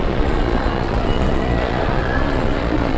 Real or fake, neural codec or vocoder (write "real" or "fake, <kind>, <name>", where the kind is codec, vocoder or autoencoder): fake, vocoder, Vocos